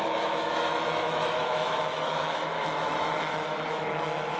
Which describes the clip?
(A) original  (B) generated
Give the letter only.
B